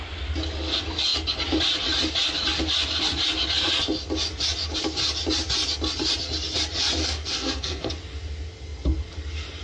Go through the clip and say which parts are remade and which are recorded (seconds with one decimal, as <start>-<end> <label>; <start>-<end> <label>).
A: 0.0-7.0 recorded; 7.0-7.9 remade; 7.9-9.6 recorded